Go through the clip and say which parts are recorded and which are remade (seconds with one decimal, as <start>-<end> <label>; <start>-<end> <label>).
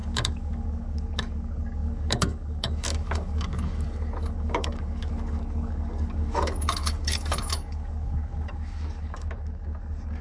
0.0-10.2 remade